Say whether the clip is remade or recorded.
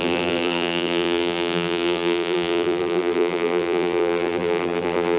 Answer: remade